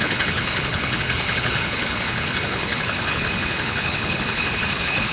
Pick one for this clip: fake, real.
fake